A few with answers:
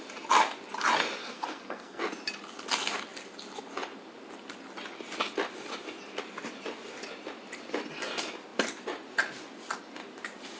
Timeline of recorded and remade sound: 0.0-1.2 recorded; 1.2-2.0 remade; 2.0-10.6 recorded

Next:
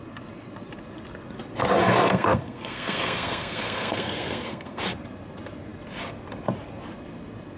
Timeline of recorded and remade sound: 0.0-1.8 recorded; 1.8-4.8 remade; 4.8-7.6 recorded

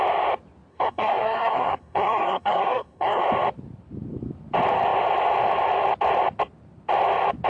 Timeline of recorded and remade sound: 0.0-0.7 recorded; 0.7-3.2 remade; 3.2-7.5 recorded

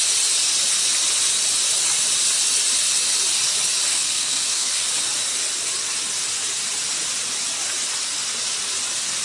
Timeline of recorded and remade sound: 0.0-3.9 recorded; 3.9-4.7 remade; 4.7-9.2 recorded